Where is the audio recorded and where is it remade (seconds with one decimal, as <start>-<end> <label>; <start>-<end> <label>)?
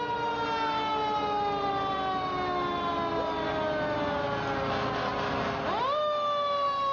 0.0-6.9 recorded